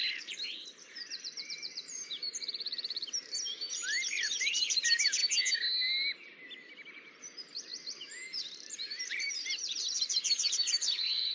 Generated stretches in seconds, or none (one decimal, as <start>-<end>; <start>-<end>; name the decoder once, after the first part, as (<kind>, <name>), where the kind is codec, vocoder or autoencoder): 0.0-5.2 (vocoder, BigVGAN v2); 7.2-11.3